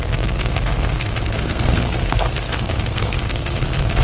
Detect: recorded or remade remade